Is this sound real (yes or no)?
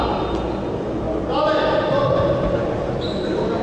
yes